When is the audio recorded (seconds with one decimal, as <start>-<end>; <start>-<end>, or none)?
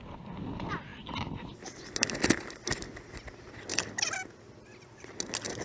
0.0-5.6